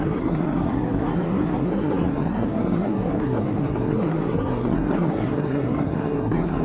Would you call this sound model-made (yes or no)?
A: yes